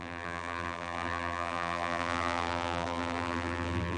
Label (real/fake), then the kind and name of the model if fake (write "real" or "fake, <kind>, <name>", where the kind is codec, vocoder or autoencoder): fake, vocoder, BigVGAN v2